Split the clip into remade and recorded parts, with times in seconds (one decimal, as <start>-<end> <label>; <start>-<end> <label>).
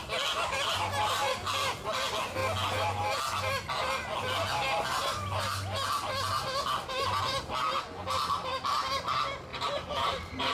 0.0-9.5 recorded; 9.5-10.5 remade